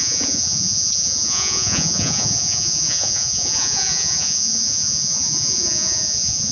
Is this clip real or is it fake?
fake